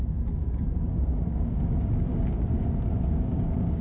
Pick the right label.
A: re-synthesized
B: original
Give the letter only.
A